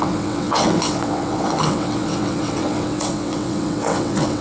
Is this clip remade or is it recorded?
remade